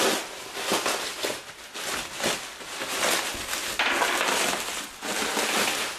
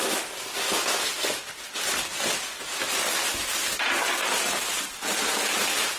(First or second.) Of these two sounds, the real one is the first